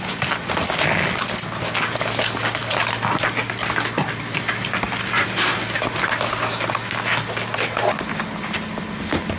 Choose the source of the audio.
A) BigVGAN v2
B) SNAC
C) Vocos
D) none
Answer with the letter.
D